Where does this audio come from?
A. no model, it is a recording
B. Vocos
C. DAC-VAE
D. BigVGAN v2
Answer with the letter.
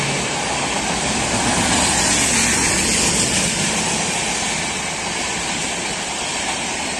A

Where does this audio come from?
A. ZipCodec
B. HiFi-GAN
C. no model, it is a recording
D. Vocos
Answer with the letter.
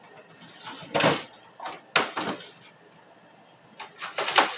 C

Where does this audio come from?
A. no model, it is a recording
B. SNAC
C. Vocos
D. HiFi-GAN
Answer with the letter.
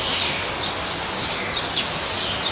A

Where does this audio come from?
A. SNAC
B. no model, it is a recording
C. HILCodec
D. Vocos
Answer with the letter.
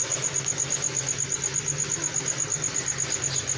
B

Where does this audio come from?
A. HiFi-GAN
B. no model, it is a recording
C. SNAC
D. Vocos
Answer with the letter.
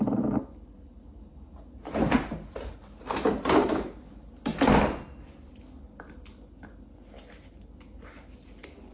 B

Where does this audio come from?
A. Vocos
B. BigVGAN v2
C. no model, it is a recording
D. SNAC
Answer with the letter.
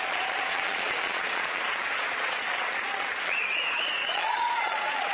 A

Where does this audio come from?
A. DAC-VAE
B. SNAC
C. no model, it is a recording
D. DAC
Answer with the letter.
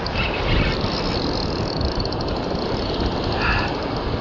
C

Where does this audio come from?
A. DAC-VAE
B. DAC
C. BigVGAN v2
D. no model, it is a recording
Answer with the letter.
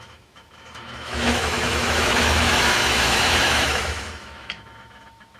A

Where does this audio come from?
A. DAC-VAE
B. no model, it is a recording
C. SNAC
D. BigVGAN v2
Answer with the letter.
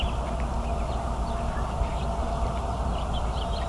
B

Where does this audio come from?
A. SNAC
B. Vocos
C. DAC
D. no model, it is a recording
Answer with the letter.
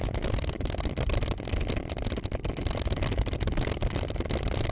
D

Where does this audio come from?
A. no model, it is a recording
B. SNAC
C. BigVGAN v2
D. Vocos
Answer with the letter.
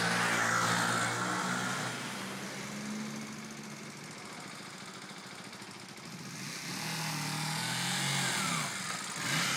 A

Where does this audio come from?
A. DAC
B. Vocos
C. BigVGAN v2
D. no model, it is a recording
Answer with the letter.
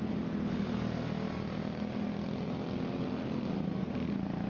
D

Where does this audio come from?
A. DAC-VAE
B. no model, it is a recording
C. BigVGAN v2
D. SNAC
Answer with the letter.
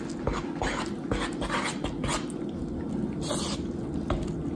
B